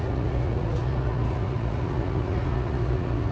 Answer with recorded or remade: remade